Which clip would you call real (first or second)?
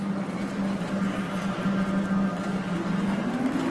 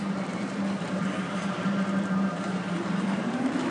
first